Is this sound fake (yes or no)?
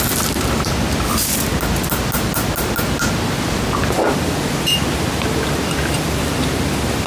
no